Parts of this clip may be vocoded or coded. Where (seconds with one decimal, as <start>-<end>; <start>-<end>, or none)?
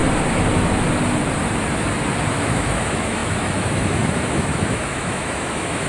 2.3-5.9